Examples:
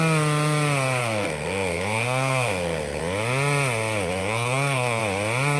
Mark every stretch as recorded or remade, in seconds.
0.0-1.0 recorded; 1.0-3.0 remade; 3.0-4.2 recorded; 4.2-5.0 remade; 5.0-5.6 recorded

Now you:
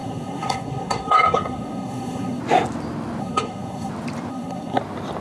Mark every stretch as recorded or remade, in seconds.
0.0-2.4 remade; 2.4-3.2 recorded; 3.2-3.9 remade; 3.9-4.3 recorded; 4.3-4.8 remade; 4.8-5.2 recorded

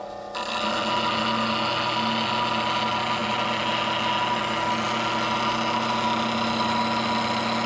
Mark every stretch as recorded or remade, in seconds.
0.0-7.7 recorded

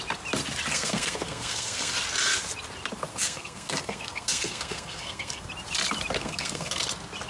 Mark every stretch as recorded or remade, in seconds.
0.0-0.7 recorded; 0.7-1.9 remade; 1.9-3.1 recorded; 3.1-5.5 remade; 5.5-6.2 recorded; 6.2-6.8 remade; 6.8-7.3 recorded

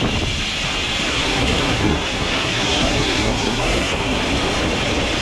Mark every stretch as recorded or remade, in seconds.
0.0-1.1 recorded; 1.1-4.2 remade; 4.2-5.2 recorded

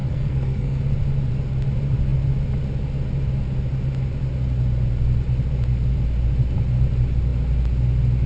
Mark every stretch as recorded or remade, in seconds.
0.0-0.8 remade; 0.8-8.3 recorded

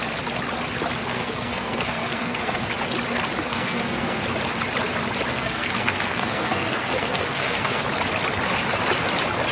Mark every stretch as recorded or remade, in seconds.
0.0-1.1 recorded; 1.1-2.7 remade; 2.7-3.5 recorded; 3.5-4.2 remade; 4.2-5.3 recorded; 5.3-7.8 remade; 7.8-9.5 recorded

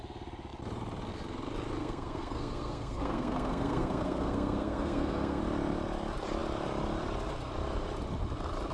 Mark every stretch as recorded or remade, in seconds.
0.0-1.8 recorded; 1.8-5.4 remade; 5.4-8.7 recorded